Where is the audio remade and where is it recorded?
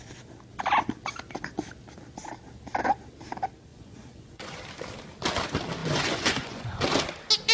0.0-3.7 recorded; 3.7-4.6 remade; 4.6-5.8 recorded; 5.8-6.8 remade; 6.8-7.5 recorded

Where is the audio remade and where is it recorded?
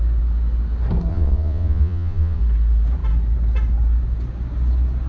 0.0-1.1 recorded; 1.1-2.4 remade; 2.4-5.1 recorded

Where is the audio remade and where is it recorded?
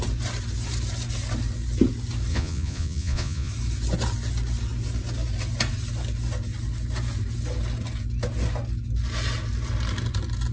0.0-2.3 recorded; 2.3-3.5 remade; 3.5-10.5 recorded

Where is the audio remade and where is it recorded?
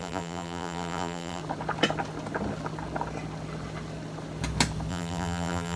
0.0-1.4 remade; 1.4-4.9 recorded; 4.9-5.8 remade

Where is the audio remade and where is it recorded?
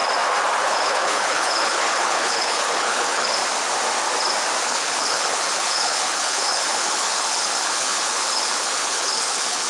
0.0-0.6 recorded; 0.6-3.4 remade; 3.4-4.6 recorded; 4.6-9.7 remade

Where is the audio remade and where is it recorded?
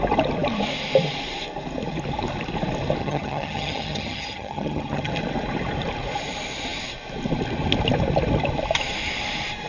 0.0-3.0 recorded; 3.0-5.1 remade; 5.1-9.7 recorded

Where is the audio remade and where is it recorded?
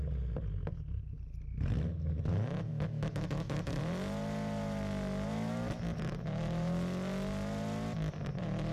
0.0-2.7 recorded; 2.7-3.8 remade; 3.8-8.7 recorded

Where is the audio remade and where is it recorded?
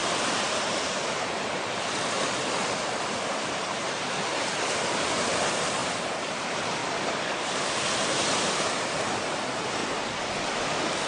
0.0-6.8 remade; 6.8-8.1 recorded; 8.1-9.8 remade; 9.8-11.1 recorded